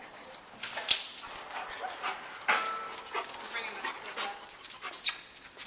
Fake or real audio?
real